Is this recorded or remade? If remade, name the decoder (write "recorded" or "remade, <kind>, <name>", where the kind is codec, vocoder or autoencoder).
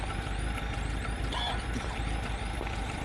remade, vocoder, BigVGAN v2